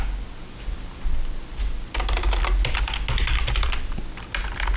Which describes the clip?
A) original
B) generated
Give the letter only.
A